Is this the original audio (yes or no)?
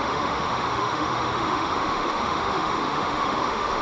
no